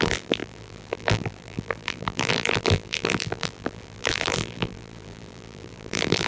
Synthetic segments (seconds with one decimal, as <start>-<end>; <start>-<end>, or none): 0.0-6.3